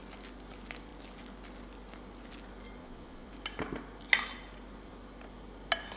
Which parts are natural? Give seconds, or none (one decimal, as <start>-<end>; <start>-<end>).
0.0-2.8; 3.3-6.0